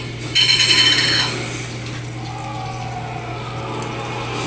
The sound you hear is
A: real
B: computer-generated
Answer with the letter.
A